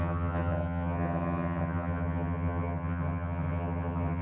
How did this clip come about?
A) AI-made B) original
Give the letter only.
A